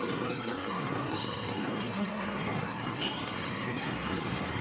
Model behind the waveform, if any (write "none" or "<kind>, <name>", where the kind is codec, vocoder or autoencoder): codec, SNAC